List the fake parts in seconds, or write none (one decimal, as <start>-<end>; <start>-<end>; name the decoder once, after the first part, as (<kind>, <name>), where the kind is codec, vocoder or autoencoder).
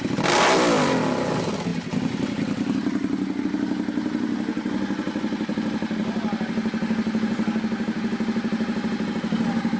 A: none